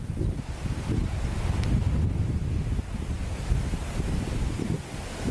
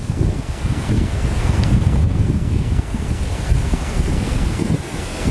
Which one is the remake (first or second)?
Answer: second